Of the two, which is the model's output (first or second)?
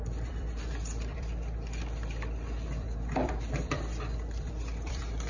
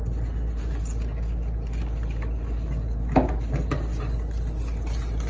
first